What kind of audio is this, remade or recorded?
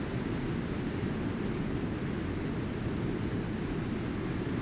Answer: recorded